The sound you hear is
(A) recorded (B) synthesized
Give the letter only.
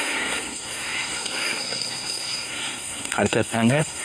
B